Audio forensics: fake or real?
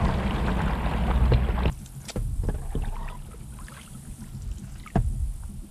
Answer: real